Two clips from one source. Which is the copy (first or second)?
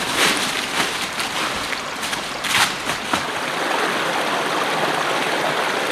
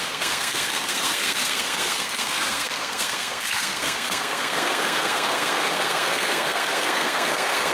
second